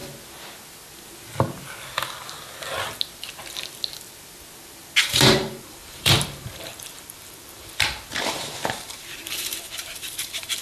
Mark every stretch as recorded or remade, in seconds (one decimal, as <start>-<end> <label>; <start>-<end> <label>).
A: 0.0-5.0 recorded; 5.0-10.6 remade